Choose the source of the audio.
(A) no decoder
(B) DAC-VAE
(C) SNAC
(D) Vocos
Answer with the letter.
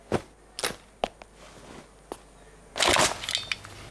A